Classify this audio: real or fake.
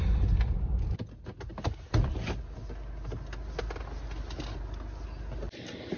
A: real